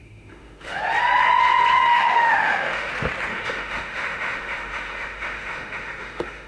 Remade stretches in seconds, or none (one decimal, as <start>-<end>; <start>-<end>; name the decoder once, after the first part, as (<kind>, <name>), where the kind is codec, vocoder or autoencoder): 0.0-0.8 (autoencoder, DAC-VAE); 1.9-2.9; 3.3-6.5